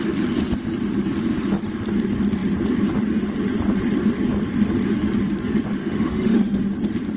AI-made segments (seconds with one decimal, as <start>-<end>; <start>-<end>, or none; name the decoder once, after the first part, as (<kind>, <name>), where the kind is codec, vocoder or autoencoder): 5.8-6.6 (autoencoder, DAC-VAE)